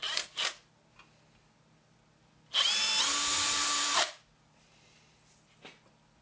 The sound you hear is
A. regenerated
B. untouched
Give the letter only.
B